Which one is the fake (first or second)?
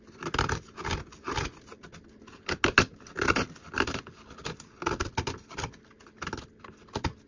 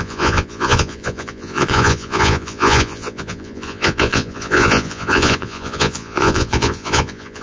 second